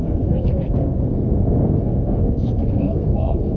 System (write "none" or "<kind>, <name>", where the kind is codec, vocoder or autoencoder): codec, SNAC